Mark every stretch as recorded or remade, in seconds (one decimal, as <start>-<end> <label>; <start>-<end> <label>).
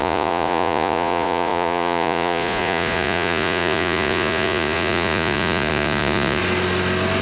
0.0-6.4 remade; 6.4-7.2 recorded